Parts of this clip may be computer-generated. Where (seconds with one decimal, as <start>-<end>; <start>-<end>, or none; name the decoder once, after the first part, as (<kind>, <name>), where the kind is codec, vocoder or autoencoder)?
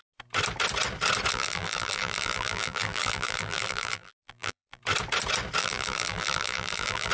1.3-4.8 (vocoder, BigVGAN v2); 5.6-7.1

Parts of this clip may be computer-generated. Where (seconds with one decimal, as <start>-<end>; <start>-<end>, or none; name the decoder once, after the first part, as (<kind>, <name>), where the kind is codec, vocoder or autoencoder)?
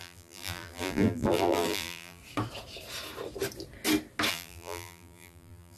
0.0-2.2 (vocoder, BigVGAN v2); 4.3-5.8